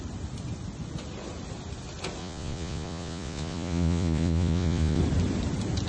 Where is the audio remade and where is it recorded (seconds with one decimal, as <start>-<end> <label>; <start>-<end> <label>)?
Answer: 0.0-2.2 recorded; 2.2-5.0 remade; 5.0-5.9 recorded